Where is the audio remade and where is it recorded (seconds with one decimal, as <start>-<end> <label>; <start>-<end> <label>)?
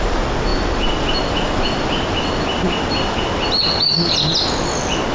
0.0-5.1 recorded